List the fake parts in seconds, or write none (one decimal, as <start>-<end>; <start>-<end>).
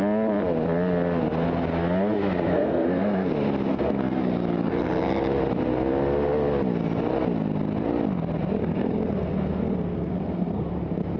2.5-3.3; 3.7-4.2; 8.6-10.7